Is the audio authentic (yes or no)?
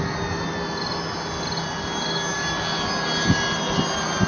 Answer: yes